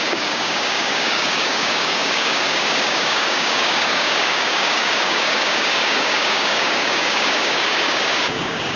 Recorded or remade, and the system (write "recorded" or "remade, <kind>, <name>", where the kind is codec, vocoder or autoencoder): remade, codec, DAC